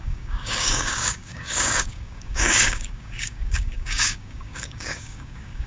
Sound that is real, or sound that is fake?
fake